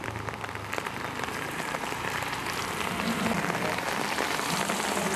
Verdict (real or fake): real